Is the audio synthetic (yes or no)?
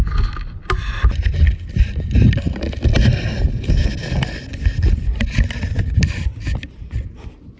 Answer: no